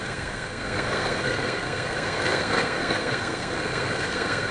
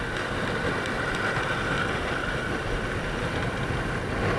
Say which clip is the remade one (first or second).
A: first